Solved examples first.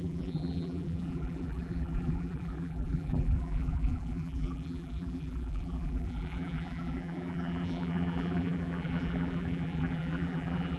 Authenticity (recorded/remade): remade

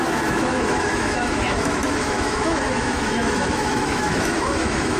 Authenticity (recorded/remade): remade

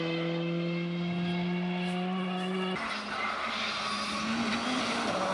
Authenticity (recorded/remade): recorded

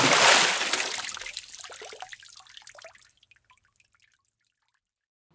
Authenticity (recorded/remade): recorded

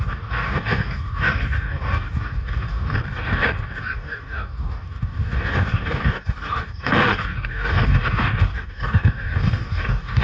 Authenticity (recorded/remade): remade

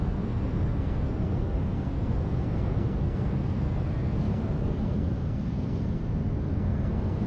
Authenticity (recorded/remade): remade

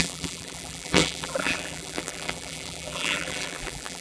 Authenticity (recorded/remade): remade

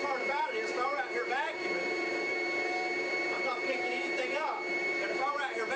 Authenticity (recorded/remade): remade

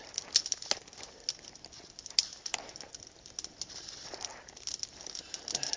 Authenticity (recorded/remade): recorded